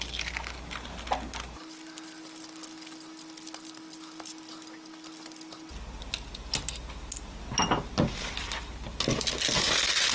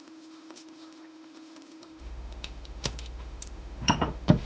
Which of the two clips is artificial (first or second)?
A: second